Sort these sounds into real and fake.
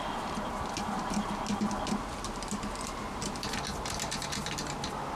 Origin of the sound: real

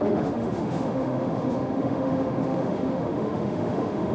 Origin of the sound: fake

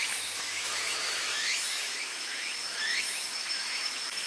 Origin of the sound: fake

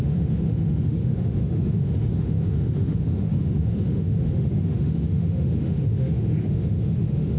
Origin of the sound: fake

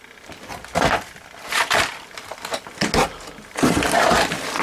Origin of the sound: real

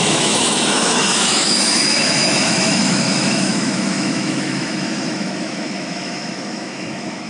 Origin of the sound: fake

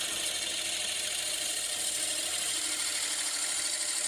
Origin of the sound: real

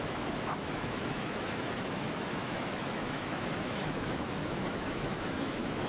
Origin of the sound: fake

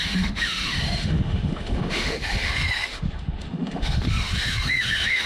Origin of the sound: fake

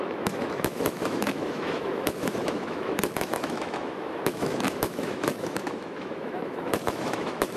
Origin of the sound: fake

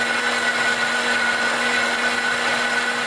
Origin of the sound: real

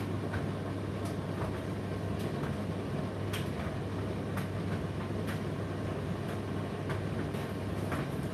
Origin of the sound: real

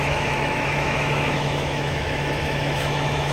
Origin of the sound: fake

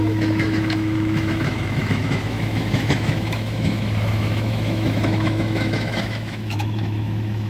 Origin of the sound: fake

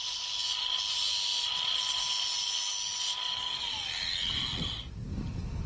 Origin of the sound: real